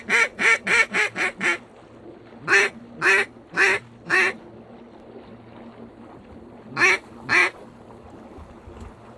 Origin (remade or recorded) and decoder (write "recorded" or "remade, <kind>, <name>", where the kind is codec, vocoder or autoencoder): recorded